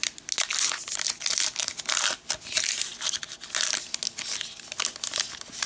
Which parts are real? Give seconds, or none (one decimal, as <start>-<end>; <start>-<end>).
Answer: 0.0-5.7